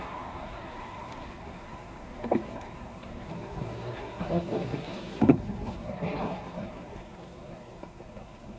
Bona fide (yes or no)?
no